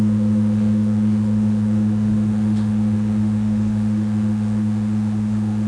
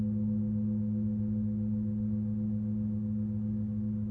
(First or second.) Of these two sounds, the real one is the second